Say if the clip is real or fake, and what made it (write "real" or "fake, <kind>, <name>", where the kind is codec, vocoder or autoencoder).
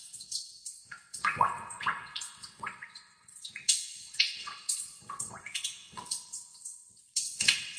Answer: fake, vocoder, WaveNeXt